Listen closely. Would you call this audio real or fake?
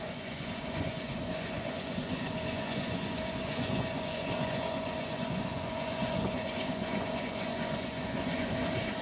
fake